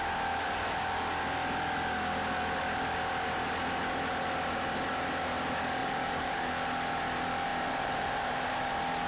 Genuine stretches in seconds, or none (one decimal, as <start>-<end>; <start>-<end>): 0.0-5.8; 6.5-7.5; 8.7-9.1

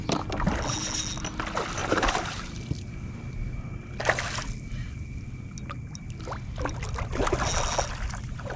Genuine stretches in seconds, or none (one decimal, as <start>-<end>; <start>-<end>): 0.0-1.8; 2.6-8.6